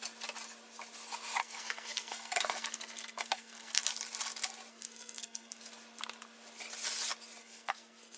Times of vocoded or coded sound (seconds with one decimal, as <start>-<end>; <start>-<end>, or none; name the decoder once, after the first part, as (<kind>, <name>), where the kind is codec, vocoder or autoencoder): 1.4-3.8 (codec, SNAC); 4.7-5.6; 7.4-8.2